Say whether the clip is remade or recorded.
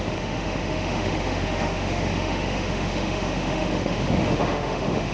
remade